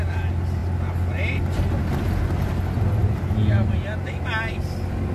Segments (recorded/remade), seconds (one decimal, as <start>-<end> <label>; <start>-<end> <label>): 0.0-5.1 recorded